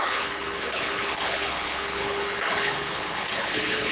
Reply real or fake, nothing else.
fake